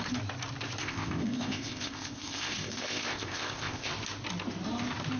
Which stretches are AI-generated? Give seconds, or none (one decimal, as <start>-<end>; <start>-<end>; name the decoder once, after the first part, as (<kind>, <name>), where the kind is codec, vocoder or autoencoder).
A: 0.8-3.9 (codec, ZipCodec)